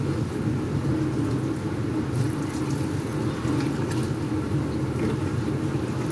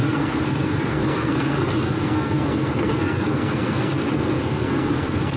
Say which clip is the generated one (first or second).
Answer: second